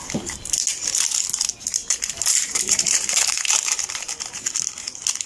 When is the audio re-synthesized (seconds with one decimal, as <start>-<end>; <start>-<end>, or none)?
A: 1.8-4.1